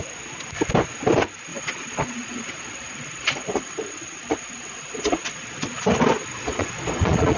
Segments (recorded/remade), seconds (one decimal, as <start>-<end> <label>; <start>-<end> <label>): 0.0-1.5 recorded; 1.5-5.8 remade; 5.8-6.2 recorded; 6.2-7.4 remade